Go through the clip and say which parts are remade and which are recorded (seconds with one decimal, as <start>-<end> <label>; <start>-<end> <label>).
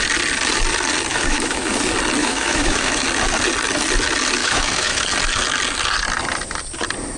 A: 0.0-1.1 recorded; 1.1-1.7 remade; 1.7-2.2 recorded; 2.2-3.0 remade; 3.0-4.4 recorded; 4.4-5.0 remade; 5.0-7.2 recorded